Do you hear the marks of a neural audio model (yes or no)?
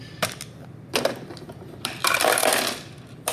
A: yes